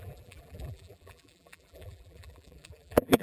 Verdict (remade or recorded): remade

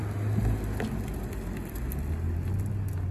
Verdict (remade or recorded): recorded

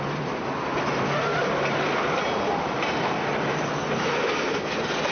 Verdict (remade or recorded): remade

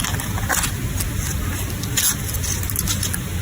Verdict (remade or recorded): recorded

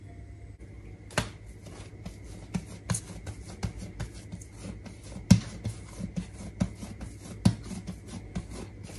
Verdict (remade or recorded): recorded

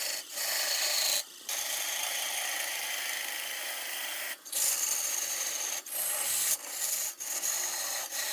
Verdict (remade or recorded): remade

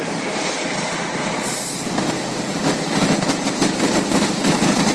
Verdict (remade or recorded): remade